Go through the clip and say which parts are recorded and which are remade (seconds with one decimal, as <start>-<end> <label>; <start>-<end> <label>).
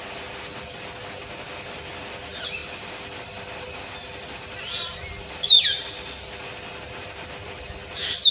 0.0-2.6 recorded; 2.6-6.3 remade; 6.3-8.3 recorded